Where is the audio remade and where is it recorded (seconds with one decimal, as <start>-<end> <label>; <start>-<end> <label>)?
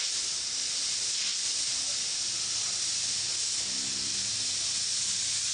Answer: 0.0-5.5 recorded